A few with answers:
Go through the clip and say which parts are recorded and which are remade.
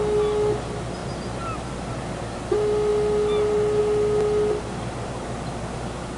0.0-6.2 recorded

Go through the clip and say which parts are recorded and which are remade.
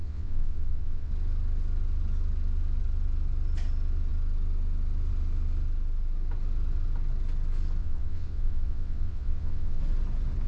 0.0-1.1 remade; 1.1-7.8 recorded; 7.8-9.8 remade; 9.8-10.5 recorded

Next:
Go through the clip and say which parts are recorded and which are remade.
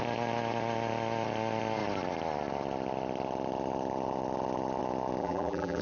0.0-5.2 recorded; 5.2-5.8 remade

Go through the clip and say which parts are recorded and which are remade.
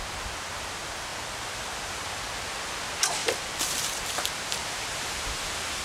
0.0-1.1 recorded; 1.1-2.2 remade; 2.2-3.2 recorded; 3.2-5.2 remade; 5.2-5.8 recorded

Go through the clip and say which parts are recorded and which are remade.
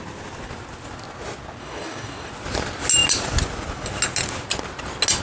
0.0-1.6 recorded; 1.6-2.3 remade; 2.3-5.2 recorded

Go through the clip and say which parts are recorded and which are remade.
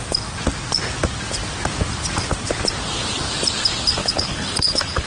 0.0-4.0 recorded; 4.0-5.1 remade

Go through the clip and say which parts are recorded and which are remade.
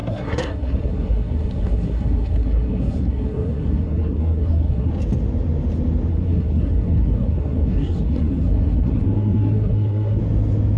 0.0-4.9 remade; 4.9-6.1 recorded; 6.1-10.2 remade; 10.2-10.8 recorded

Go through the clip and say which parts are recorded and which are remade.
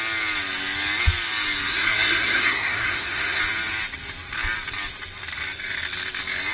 0.0-1.7 recorded; 1.7-3.4 remade; 3.4-6.5 recorded